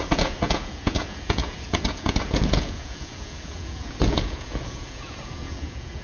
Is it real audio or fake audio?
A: fake